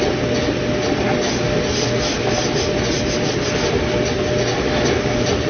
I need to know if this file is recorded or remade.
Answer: recorded